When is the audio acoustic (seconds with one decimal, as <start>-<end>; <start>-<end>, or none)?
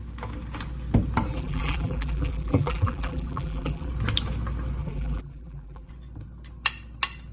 0.0-1.3; 3.9-4.8; 5.9-7.3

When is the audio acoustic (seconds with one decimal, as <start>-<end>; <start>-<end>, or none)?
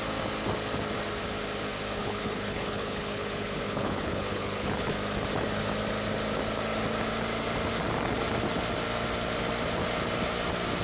0.0-2.0; 4.9-10.8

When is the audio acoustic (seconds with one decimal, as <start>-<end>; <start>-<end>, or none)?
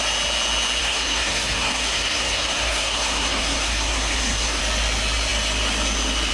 0.0-0.8; 4.6-6.3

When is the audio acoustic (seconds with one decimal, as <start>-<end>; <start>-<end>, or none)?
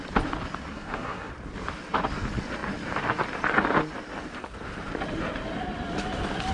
0.0-0.7; 1.3-6.5